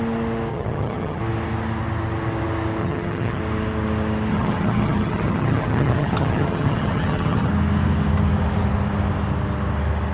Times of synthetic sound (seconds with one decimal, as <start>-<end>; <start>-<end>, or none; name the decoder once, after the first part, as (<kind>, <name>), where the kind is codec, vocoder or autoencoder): 0.5-1.2 (vocoder, HiFi-GAN); 2.8-3.4; 4.3-7.5